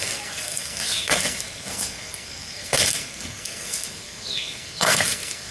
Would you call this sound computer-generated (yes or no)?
yes